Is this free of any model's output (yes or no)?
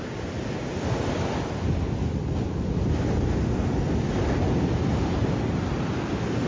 yes